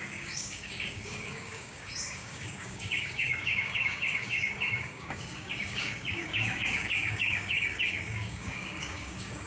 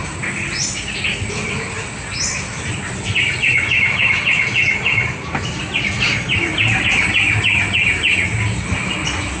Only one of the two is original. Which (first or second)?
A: second